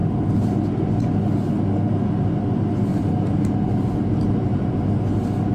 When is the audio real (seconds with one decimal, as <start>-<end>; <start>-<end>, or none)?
0.0-2.9; 4.9-5.5